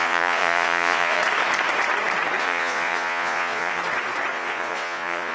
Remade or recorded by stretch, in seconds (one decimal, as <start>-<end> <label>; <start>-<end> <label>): 0.0-1.2 remade; 1.2-2.4 recorded; 2.4-3.8 remade; 3.8-4.3 recorded; 4.3-5.3 remade